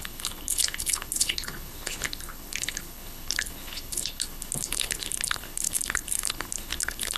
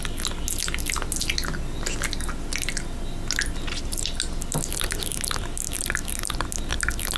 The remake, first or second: first